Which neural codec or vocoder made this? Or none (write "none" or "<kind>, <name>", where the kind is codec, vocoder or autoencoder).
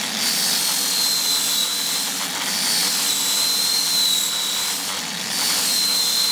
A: none